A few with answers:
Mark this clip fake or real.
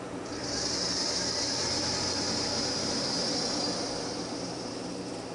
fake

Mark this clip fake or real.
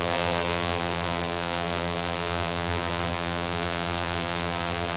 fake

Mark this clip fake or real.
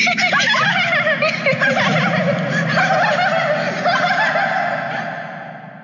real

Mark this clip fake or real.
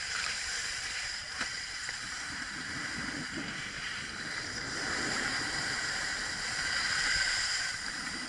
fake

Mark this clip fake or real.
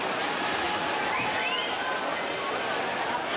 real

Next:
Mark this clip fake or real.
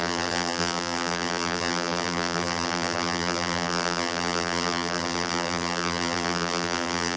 fake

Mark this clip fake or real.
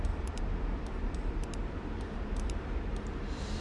fake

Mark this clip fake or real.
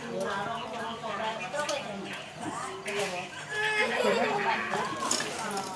real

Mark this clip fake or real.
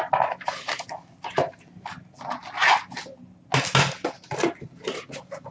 real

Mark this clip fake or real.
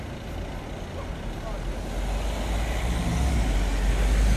real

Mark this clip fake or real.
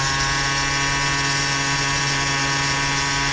real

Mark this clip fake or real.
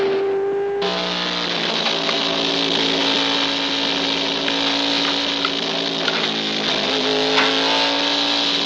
real